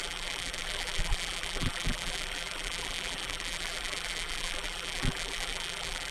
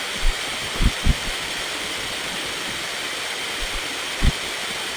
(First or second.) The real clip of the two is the second